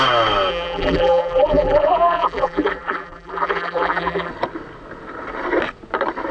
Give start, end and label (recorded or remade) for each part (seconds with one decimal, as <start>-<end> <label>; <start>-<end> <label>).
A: 0.0-0.5 recorded; 0.5-4.3 remade; 4.3-6.3 recorded

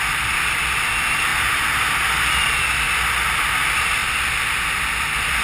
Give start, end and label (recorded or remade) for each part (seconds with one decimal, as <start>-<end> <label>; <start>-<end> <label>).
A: 0.0-5.4 recorded